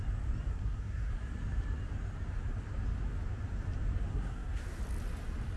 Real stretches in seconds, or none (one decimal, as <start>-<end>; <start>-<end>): 0.0-0.5; 1.1-4.1; 4.8-5.6